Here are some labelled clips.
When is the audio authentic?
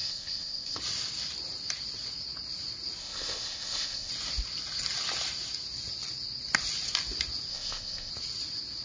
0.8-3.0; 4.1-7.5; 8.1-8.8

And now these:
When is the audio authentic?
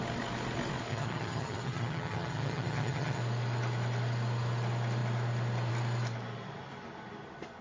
0.0-0.9; 3.2-7.6